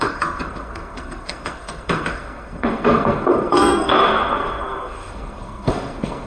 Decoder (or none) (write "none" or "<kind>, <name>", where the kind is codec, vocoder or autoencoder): codec, SNAC